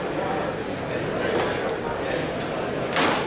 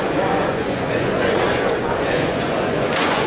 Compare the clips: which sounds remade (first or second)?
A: second